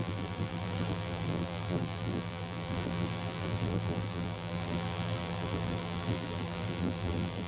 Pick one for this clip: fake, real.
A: fake